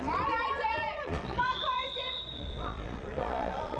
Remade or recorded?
remade